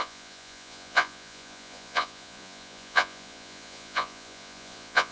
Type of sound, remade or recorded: remade